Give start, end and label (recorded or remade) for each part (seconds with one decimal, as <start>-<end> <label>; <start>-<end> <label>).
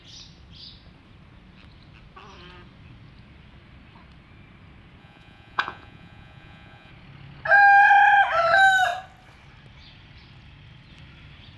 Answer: 0.0-5.0 recorded; 5.0-6.9 remade; 6.9-11.6 recorded